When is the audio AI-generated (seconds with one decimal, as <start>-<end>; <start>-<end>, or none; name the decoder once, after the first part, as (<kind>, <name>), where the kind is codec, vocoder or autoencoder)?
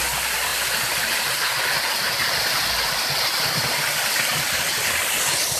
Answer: none